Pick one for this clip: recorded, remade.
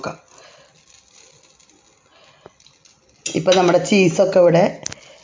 recorded